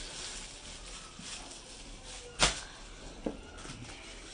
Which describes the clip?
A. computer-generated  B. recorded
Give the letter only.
B